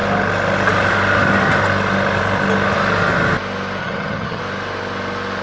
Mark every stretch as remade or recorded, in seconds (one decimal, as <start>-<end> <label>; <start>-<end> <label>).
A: 0.0-3.8 recorded; 3.8-4.4 remade; 4.4-5.4 recorded